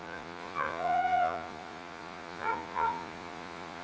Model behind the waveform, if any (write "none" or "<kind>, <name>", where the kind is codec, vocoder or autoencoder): vocoder, Vocos